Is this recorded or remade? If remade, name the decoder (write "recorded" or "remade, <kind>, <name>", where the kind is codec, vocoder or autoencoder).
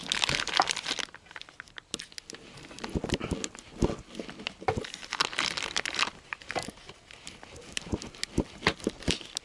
recorded